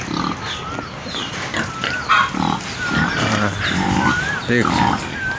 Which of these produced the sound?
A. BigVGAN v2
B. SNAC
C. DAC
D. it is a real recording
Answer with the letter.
D